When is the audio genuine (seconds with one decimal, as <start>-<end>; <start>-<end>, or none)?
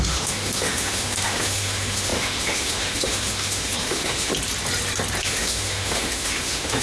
4.3-5.2